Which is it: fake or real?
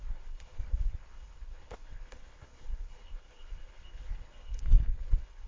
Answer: fake